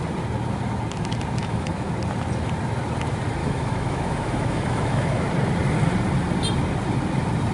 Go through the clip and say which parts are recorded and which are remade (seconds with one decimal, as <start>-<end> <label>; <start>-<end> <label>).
0.0-1.4 recorded; 1.4-1.9 remade; 1.9-3.4 recorded; 3.4-5.3 remade; 5.3-7.5 recorded